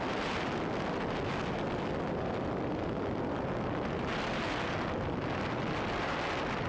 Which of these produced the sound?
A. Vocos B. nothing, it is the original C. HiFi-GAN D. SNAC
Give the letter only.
B